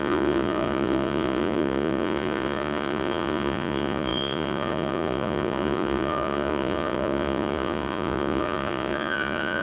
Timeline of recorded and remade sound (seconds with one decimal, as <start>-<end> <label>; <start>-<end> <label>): 0.0-9.6 remade